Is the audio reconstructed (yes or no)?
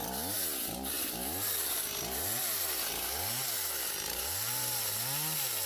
no